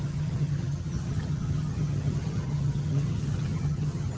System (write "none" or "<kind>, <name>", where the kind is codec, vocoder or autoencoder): vocoder, HiFi-GAN